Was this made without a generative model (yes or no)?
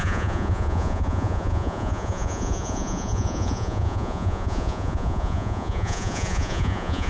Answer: no